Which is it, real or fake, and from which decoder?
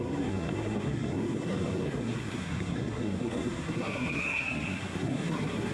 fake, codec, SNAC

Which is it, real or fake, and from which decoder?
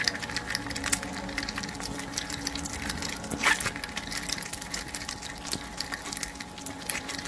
real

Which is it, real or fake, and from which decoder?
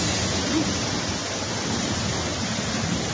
real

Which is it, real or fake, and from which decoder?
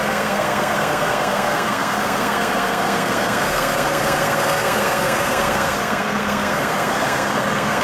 fake, codec, SNAC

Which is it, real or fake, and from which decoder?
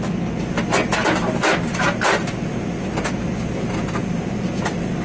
real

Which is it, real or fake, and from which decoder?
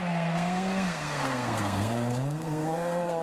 fake, codec, SNAC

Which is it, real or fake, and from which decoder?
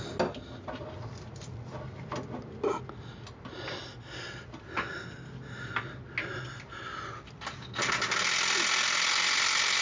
real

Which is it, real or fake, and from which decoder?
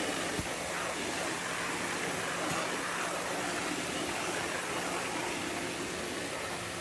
real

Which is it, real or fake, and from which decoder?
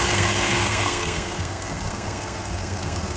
fake, codec, SNAC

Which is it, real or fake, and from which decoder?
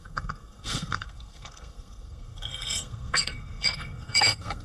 fake, codec, SNAC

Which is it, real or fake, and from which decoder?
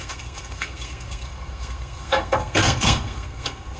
fake, codec, SNAC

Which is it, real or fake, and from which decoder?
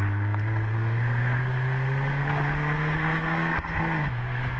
fake, codec, SNAC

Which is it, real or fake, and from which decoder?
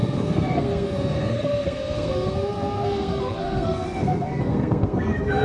fake, codec, SNAC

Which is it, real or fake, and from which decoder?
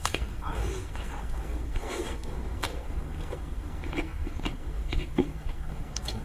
fake, codec, SNAC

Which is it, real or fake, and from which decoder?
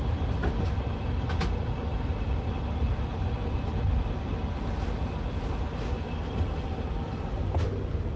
real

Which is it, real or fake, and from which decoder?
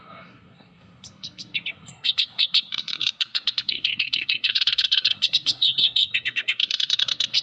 fake, codec, SNAC